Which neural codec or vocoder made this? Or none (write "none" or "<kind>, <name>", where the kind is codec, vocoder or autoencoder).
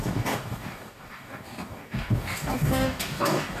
codec, DAC